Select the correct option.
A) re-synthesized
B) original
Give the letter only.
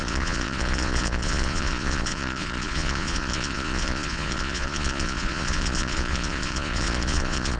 A